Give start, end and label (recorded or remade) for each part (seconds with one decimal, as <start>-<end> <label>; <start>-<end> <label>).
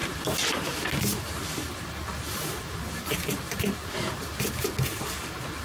0.0-0.6 remade; 0.6-1.1 recorded; 1.1-4.5 remade; 4.5-5.6 recorded